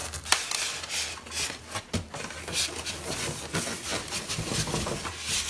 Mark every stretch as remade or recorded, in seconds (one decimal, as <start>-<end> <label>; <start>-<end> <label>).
0.0-5.5 recorded

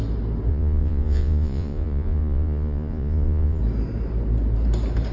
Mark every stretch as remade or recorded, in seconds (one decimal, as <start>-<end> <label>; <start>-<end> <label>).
0.0-0.5 recorded; 0.5-3.6 remade; 3.6-5.1 recorded

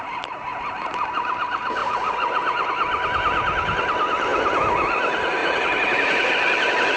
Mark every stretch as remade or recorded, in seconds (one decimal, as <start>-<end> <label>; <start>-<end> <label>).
0.0-1.8 recorded; 1.8-2.7 remade; 2.7-5.4 recorded; 5.4-6.3 remade; 6.3-7.0 recorded

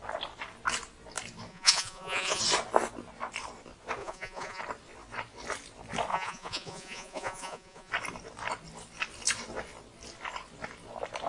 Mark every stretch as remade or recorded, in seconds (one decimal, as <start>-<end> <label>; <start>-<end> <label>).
0.0-1.5 recorded; 1.5-2.4 remade; 2.4-4.0 recorded; 4.0-4.6 remade; 4.6-6.1 recorded; 6.1-7.9 remade; 7.9-11.3 recorded

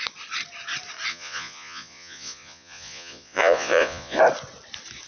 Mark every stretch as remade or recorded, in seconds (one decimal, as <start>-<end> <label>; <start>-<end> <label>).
0.0-1.1 recorded; 1.1-4.2 remade; 4.2-5.1 recorded

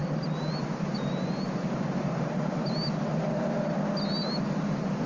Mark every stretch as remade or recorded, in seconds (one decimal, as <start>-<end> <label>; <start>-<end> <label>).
0.0-5.1 recorded

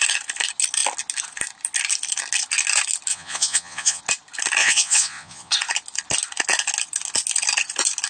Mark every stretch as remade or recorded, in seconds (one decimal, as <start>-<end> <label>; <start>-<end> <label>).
0.0-3.1 recorded; 3.1-4.0 remade; 4.0-4.6 recorded; 4.6-5.5 remade; 5.5-8.1 recorded